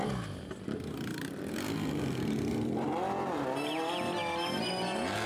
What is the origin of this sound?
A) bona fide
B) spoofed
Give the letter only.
A